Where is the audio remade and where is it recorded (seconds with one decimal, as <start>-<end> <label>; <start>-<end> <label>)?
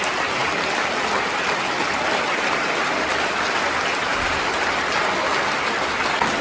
0.0-4.1 recorded; 4.1-4.9 remade; 4.9-6.4 recorded